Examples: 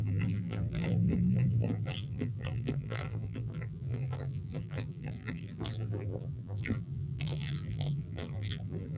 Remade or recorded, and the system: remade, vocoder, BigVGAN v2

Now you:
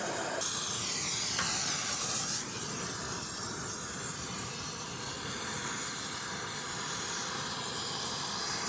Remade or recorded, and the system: remade, vocoder, BigVGAN v2